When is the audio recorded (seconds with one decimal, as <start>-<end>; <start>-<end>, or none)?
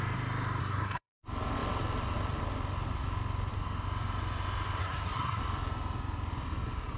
0.0-0.6; 1.2-4.8; 5.4-7.0